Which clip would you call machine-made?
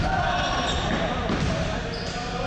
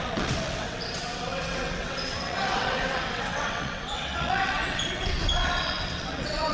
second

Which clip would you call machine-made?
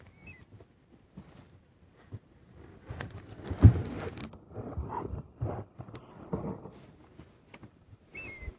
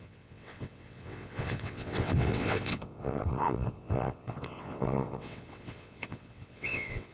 second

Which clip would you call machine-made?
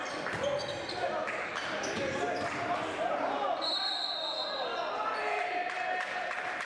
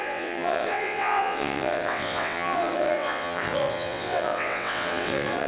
second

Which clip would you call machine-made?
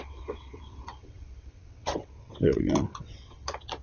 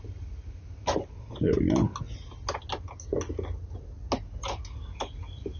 first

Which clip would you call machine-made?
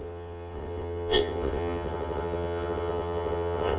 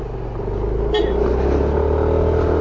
first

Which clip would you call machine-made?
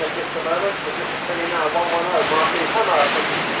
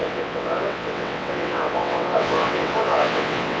second